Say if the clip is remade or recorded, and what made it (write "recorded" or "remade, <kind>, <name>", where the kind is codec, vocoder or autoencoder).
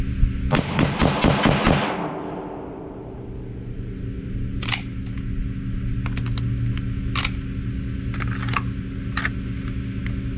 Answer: recorded